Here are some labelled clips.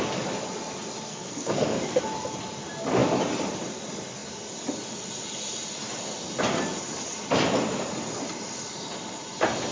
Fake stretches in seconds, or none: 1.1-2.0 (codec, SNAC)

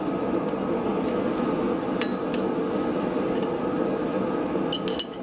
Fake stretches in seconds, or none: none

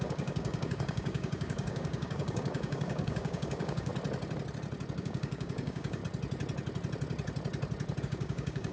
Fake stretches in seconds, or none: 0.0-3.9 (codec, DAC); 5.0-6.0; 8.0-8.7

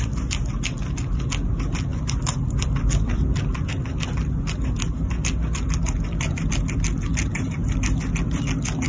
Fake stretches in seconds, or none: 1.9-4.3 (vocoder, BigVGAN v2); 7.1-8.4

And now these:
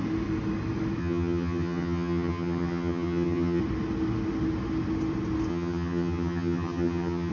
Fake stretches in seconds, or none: 1.0-3.6 (vocoder, HiFi-GAN); 5.5-7.3

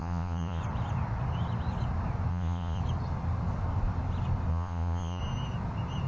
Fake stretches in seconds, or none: 0.0-0.6 (vocoder, Vocos); 2.3-2.8; 4.5-5.2

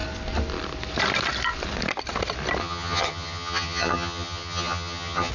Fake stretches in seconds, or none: 2.6-5.3 (vocoder, HiFi-GAN)